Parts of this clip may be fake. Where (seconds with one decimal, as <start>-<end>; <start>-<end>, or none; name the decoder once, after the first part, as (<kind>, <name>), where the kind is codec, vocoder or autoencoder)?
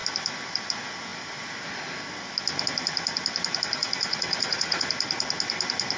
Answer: 3.8-4.9 (vocoder, Vocos)